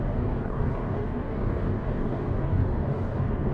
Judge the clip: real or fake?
fake